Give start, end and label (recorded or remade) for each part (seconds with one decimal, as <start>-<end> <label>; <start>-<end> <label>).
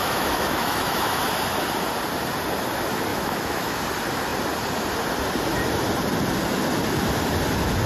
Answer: 0.0-1.2 remade; 1.2-3.1 recorded; 3.1-3.8 remade; 3.8-7.9 recorded